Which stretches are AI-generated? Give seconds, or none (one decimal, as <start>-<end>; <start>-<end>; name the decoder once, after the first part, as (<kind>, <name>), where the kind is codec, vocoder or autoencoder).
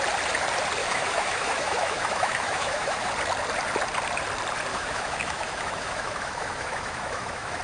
0.8-3.1 (autoencoder, DAC-VAE); 4.7-7.6